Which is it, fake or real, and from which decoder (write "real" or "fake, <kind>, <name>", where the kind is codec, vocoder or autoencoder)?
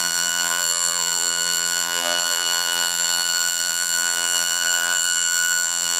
fake, vocoder, BigVGAN v2